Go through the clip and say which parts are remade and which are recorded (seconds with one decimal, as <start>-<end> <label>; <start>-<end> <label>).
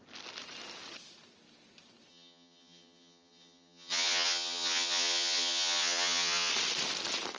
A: 0.0-2.1 recorded; 2.1-6.5 remade; 6.5-7.4 recorded